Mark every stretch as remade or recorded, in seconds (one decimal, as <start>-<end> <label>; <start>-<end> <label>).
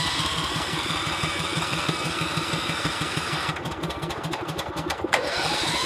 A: 0.0-5.9 remade